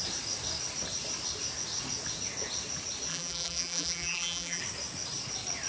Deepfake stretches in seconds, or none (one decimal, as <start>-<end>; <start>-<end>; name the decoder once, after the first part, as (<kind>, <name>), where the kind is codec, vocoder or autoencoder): 3.1-4.6 (vocoder, BigVGAN v2)